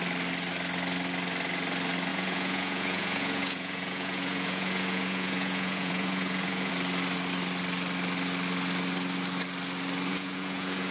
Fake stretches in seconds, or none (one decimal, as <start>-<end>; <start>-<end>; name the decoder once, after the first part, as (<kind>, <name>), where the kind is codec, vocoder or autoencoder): 2.1-6.7 (vocoder, Vocos); 10.1-10.9